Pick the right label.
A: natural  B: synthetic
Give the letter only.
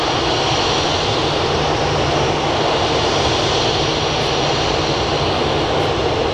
A